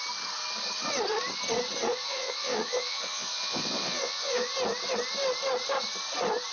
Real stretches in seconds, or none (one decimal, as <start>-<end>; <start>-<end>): 0.0-1.9; 4.5-6.5